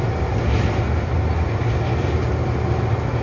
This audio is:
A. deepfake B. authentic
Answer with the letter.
B